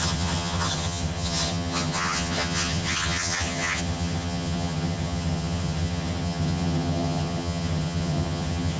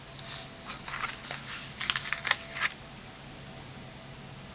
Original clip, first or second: second